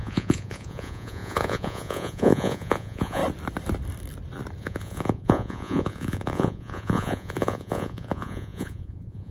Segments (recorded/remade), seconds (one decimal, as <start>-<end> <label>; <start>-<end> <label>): 0.0-3.2 remade; 3.2-4.6 recorded; 4.6-9.3 remade